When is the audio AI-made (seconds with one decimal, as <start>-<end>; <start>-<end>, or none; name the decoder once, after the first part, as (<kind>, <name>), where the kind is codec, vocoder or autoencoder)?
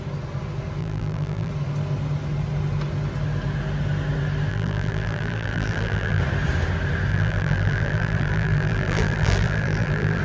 0.8-1.5 (vocoder, BigVGAN v2); 4.5-6.2; 7.1-10.2